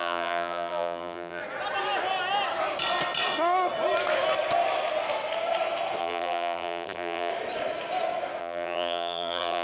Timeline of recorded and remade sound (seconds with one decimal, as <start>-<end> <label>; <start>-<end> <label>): 0.0-1.4 remade; 1.4-6.0 recorded; 6.0-7.3 remade; 7.3-8.4 recorded; 8.4-9.6 remade

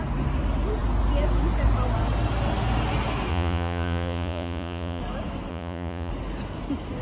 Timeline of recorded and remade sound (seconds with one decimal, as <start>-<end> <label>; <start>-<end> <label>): 0.0-3.3 recorded; 3.3-5.0 remade; 5.0-5.5 recorded; 5.5-6.1 remade; 6.1-7.0 recorded

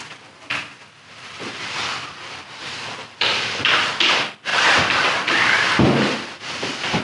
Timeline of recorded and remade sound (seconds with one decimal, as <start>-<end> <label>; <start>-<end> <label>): 0.0-1.9 recorded; 1.9-2.7 remade; 2.7-4.5 recorded; 4.5-6.4 remade; 6.4-7.0 recorded

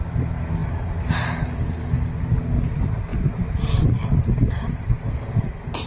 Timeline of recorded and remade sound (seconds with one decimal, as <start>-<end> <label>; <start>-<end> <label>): 0.0-5.9 recorded

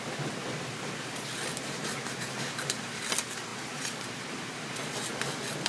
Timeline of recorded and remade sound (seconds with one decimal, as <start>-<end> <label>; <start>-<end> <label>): 0.0-1.5 recorded; 1.5-3.0 remade; 3.0-3.5 recorded; 3.5-4.7 remade; 4.7-5.7 recorded

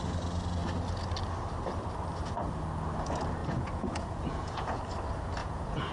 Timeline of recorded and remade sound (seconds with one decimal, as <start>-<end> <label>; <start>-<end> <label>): 0.0-3.4 recorded; 3.4-4.8 remade; 4.8-5.4 recorded; 5.4-5.9 remade